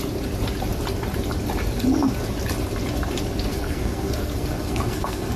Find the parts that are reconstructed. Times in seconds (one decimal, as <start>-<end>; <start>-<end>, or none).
3.5-5.4